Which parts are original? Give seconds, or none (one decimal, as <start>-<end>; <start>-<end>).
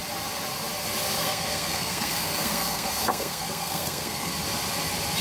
0.0-1.2; 4.3-5.2